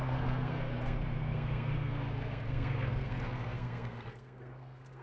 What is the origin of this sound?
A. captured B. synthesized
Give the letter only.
B